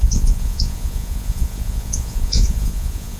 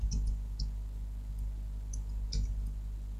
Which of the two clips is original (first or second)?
second